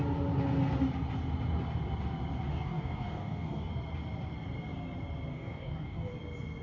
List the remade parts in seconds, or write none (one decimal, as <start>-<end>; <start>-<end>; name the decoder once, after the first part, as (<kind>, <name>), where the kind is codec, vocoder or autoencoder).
2.5-3.7 (codec, DAC); 5.3-6.1